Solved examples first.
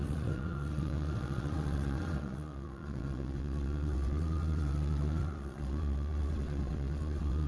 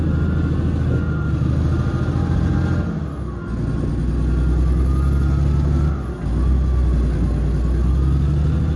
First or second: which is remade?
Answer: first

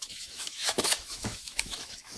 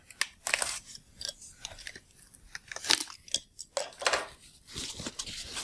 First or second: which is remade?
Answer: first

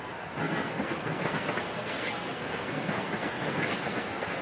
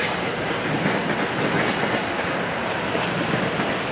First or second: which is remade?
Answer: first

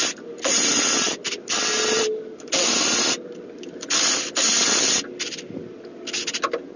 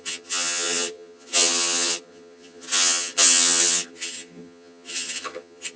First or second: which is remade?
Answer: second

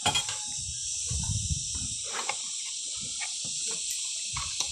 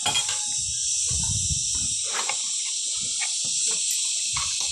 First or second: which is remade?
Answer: first